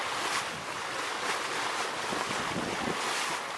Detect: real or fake real